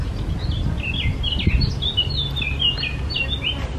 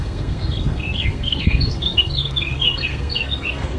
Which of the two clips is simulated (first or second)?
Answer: second